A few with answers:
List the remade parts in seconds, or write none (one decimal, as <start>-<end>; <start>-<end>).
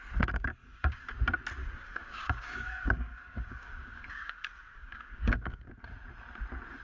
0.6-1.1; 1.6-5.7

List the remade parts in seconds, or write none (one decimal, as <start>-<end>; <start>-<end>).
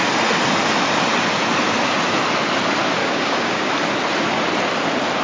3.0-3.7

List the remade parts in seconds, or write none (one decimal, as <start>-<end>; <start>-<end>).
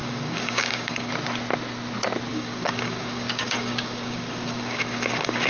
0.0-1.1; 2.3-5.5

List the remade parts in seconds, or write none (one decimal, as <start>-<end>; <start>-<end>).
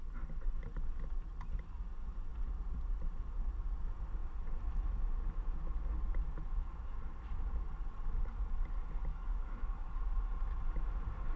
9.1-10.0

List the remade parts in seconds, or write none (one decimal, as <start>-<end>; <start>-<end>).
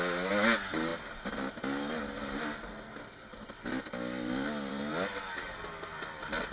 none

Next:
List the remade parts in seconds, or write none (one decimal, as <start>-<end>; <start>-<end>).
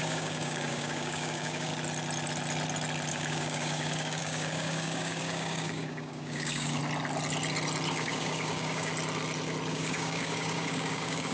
0.0-1.7; 3.1-6.8; 7.9-8.9; 9.7-11.3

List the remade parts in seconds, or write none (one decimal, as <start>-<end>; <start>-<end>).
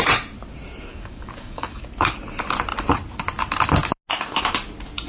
0.9-1.9